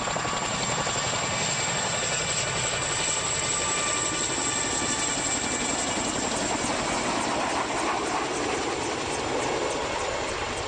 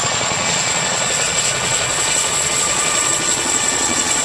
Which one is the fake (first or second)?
second